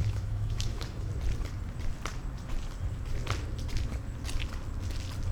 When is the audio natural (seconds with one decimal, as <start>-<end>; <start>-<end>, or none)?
1.1-5.3